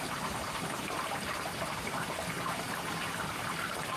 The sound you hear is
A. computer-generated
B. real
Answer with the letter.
A